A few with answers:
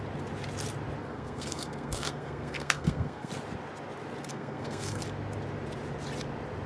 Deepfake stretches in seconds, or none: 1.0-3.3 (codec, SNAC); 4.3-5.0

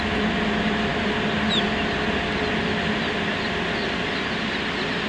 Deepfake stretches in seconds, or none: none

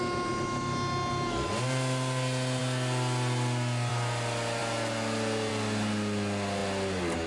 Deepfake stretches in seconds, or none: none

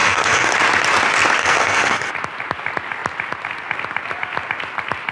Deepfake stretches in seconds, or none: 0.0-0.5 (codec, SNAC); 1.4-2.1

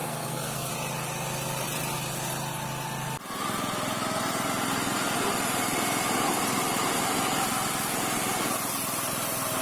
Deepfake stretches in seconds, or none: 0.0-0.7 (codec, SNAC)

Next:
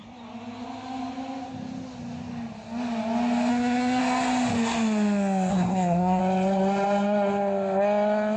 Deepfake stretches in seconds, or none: 3.5-4.0 (codec, SNAC); 5.5-6.2

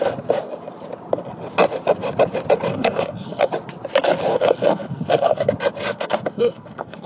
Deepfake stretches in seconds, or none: 2.7-3.5 (codec, SNAC); 4.3-5.5; 5.9-7.1

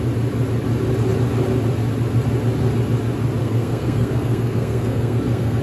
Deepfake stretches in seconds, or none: 3.4-5.6 (codec, SNAC)